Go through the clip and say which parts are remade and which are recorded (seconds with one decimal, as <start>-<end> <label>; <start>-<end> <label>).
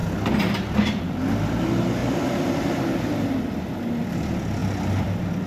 0.0-5.5 recorded